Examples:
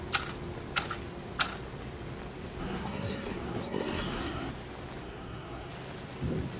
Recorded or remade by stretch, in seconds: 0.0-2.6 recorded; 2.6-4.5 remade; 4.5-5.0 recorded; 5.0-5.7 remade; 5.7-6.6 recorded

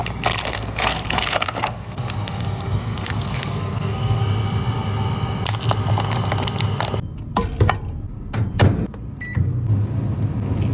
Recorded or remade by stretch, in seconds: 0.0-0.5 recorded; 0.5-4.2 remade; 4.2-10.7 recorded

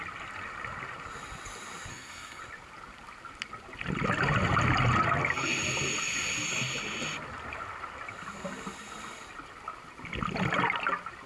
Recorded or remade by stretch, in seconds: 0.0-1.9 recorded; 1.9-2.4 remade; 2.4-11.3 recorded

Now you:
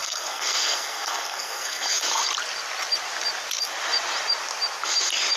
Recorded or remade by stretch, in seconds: 0.0-2.2 remade; 2.2-5.4 recorded

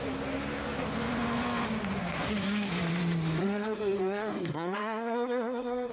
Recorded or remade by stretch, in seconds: 0.0-2.0 recorded; 2.0-2.7 remade; 2.7-3.4 recorded; 3.4-5.9 remade

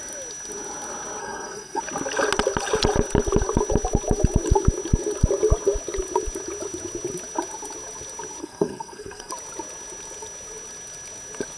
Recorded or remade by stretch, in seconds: 0.0-1.2 recorded; 1.2-1.8 remade; 1.8-8.4 recorded; 8.4-9.3 remade; 9.3-11.6 recorded

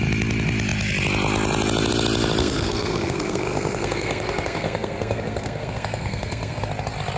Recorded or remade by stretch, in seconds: 0.0-2.4 recorded; 2.4-6.7 remade; 6.7-7.2 recorded

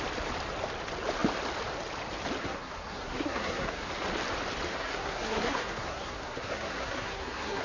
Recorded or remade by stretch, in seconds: 0.0-2.4 recorded; 2.4-3.9 remade; 3.9-4.7 recorded; 4.7-7.6 remade